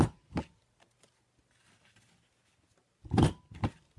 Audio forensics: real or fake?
real